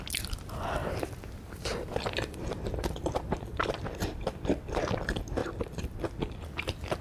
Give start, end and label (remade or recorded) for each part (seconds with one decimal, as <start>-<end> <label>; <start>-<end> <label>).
0.0-0.8 recorded; 0.8-5.0 remade; 5.0-5.4 recorded; 5.4-6.0 remade; 6.0-7.0 recorded